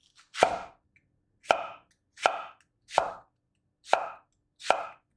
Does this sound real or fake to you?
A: real